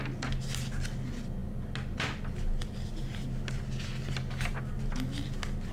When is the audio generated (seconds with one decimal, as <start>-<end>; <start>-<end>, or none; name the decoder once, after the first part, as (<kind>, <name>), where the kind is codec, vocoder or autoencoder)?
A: none